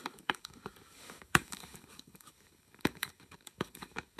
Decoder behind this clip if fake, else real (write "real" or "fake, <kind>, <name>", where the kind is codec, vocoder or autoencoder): fake, codec, DAC